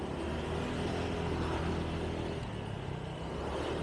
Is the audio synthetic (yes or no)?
no